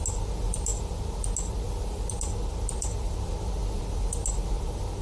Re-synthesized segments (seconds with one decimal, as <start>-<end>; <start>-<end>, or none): none